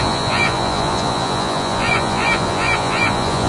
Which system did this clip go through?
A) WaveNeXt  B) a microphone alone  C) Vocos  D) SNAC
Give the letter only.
C